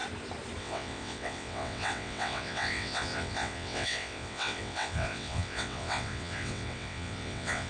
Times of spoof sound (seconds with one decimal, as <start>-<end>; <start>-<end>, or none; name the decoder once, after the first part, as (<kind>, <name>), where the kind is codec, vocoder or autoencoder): 0.6-7.7 (vocoder, WaveNeXt)